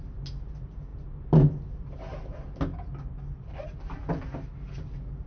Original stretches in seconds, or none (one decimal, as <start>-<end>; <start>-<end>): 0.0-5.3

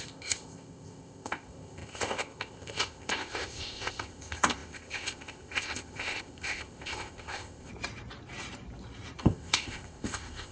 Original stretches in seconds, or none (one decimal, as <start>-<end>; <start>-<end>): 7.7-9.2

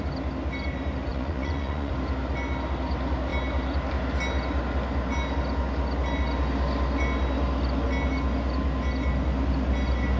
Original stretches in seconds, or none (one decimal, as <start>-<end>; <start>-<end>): 0.0-1.1; 1.9-10.2

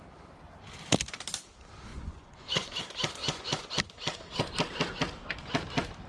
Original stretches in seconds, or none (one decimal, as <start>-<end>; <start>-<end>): 0.0-1.9; 2.8-3.2; 3.7-6.1

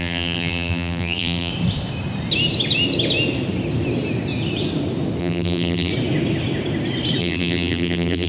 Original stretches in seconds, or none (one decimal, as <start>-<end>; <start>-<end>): 1.5-5.2; 5.9-7.2